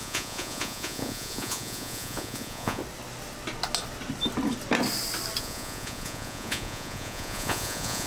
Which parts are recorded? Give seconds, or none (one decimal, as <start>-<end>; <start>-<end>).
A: 2.8-5.4